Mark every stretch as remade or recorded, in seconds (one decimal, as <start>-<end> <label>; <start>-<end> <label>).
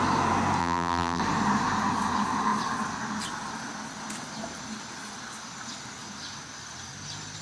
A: 0.0-0.6 recorded; 0.6-1.2 remade; 1.2-7.4 recorded